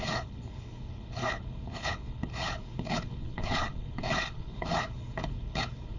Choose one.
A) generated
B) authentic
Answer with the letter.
A